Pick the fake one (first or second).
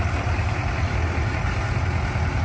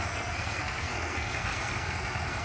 second